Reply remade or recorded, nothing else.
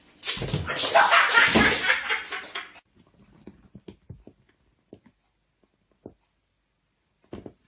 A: recorded